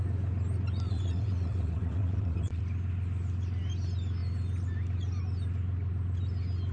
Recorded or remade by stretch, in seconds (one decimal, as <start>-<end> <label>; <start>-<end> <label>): 0.0-0.9 recorded; 0.9-2.6 remade; 2.6-6.7 recorded